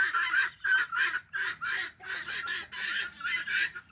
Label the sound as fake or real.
real